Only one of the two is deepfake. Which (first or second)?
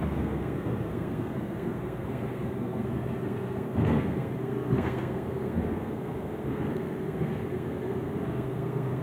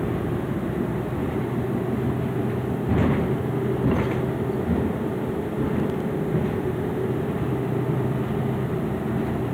first